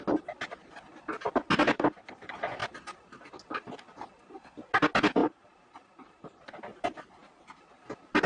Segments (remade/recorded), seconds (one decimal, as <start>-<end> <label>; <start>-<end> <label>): 0.0-5.2 recorded; 5.2-6.6 remade; 6.6-8.3 recorded